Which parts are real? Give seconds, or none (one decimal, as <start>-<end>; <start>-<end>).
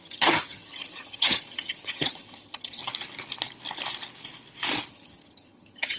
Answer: 2.8-4.9